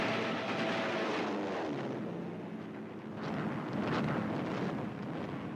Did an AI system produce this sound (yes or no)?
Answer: no